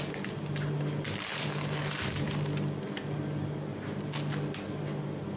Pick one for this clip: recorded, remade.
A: recorded